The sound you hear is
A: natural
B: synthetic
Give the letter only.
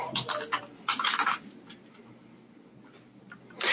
A